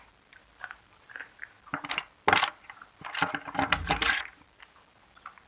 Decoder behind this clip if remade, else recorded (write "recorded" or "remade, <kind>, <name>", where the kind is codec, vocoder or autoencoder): remade, vocoder, BigVGAN v2